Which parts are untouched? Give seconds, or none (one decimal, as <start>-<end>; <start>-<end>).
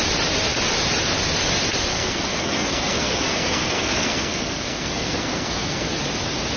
0.0-1.9; 5.9-6.6